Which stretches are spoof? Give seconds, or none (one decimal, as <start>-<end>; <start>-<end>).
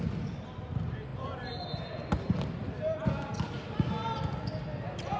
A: none